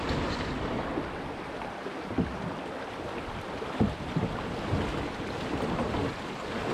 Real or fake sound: real